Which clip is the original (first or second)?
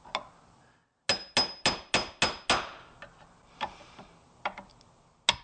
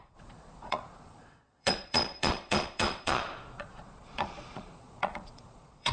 first